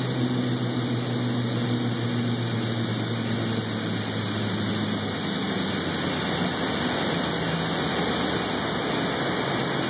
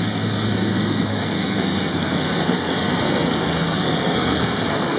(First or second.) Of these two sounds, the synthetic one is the second